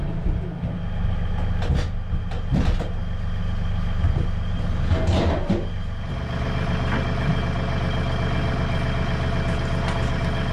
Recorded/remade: recorded